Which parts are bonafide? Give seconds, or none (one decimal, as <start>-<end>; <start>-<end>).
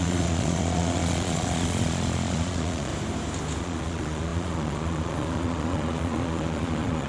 2.9-3.6